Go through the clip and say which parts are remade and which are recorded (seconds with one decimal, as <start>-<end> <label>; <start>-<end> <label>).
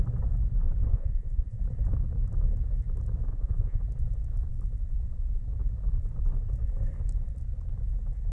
0.0-0.9 recorded; 0.9-1.6 remade; 1.6-3.3 recorded; 3.3-3.8 remade; 3.8-8.3 recorded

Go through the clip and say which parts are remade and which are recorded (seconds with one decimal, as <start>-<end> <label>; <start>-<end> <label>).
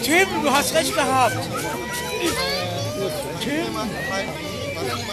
0.0-5.1 recorded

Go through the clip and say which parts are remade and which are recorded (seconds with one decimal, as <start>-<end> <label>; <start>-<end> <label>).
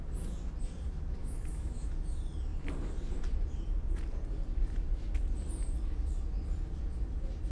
0.0-1.2 recorded; 1.2-1.9 remade; 1.9-7.5 recorded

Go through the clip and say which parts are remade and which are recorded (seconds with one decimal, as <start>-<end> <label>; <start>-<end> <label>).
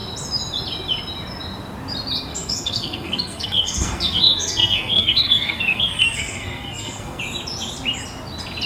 0.0-2.3 recorded; 2.3-7.2 remade; 7.2-8.7 recorded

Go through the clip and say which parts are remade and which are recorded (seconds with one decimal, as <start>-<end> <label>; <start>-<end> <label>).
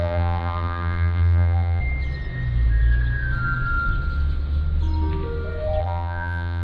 0.0-1.8 remade; 1.8-5.8 recorded; 5.8-6.6 remade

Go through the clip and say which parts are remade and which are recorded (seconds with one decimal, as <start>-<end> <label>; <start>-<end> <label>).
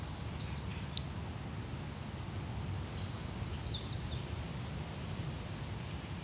0.0-6.2 recorded